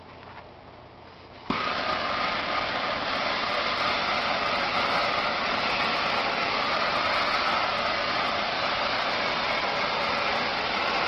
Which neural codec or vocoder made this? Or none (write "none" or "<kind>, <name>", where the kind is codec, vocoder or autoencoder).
none